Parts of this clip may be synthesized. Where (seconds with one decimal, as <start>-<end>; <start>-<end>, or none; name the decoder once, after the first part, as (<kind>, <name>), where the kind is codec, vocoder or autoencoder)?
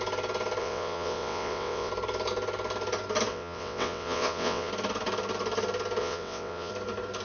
0.6-1.9 (vocoder, WaveNeXt); 3.3-4.7; 6.0-6.7